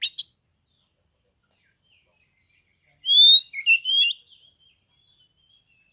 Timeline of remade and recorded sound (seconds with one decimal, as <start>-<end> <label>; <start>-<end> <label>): 0.0-0.5 recorded; 0.5-4.0 remade; 4.0-5.9 recorded